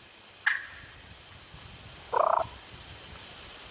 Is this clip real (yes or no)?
yes